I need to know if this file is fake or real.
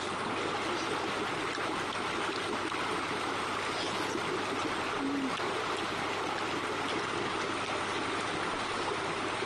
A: real